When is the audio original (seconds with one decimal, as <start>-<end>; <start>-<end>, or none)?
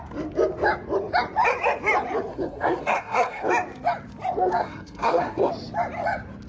0.0-2.3; 3.5-4.6; 5.5-6.5